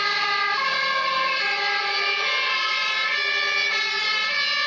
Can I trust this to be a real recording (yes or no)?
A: yes